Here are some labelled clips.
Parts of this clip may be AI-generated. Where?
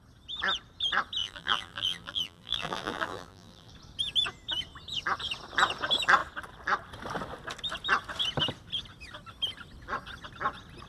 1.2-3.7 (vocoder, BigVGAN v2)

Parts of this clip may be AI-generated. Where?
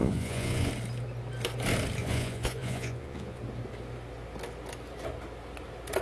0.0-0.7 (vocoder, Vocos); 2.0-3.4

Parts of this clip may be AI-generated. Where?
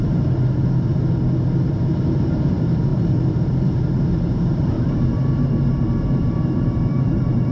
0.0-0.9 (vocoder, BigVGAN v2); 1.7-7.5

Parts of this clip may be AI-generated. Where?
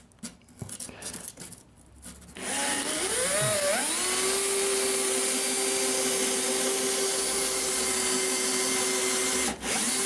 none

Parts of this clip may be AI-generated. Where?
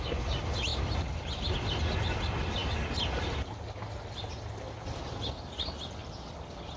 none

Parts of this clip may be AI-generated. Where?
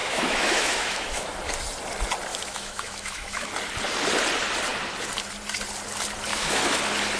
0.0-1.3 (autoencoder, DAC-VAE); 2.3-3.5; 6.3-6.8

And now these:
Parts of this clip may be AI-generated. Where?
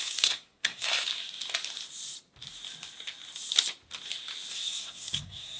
0.0-1.1 (codec, SNAC); 4.5-5.6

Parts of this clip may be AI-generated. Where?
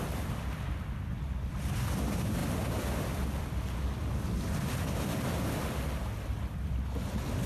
none